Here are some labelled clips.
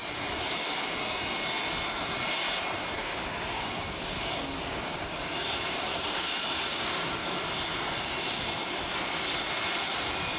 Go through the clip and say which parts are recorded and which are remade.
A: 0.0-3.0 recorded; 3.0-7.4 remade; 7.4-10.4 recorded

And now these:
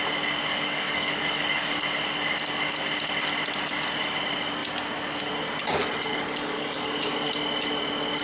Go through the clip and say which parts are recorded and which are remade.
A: 0.0-0.5 recorded; 0.5-1.8 remade; 1.8-6.1 recorded; 6.1-7.3 remade; 7.3-8.2 recorded

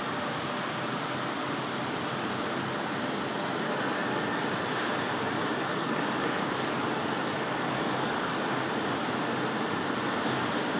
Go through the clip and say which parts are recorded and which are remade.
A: 0.0-5.6 recorded; 5.6-8.4 remade; 8.4-10.8 recorded

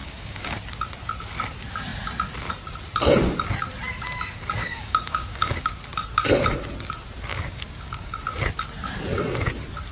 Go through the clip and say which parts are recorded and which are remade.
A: 0.0-0.6 remade; 0.6-4.6 recorded; 4.6-5.7 remade; 5.7-7.3 recorded; 7.3-8.1 remade; 8.1-9.9 recorded

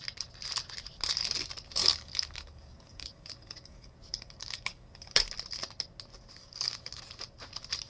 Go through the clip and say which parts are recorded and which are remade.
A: 0.0-1.8 recorded; 1.8-5.3 remade; 5.3-6.4 recorded; 6.4-7.0 remade; 7.0-7.9 recorded

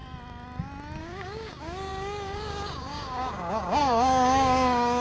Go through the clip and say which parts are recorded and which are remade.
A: 0.0-1.0 recorded; 1.0-5.0 remade

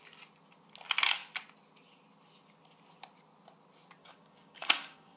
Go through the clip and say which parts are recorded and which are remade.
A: 0.0-4.0 recorded; 4.0-5.2 remade